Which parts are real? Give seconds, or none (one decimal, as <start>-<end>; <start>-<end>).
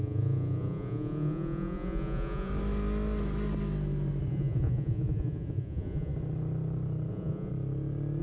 2.5-4.3; 6.1-7.1; 7.5-8.2